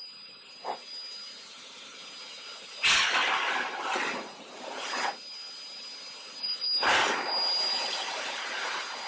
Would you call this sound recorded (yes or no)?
yes